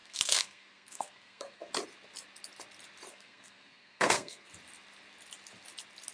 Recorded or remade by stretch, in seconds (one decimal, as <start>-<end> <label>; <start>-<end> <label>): 0.0-1.7 remade; 1.7-3.1 recorded; 3.1-4.5 remade; 4.5-6.1 recorded